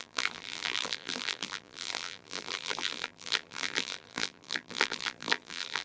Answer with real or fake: fake